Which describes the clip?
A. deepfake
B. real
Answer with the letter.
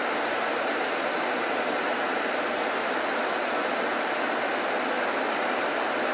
B